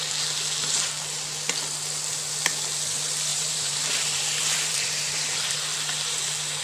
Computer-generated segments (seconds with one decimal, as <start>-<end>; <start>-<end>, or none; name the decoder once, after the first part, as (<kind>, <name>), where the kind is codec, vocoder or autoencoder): 3.3-5.5 (vocoder, BigVGAN v2)